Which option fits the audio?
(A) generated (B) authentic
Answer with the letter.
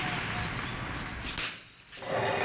B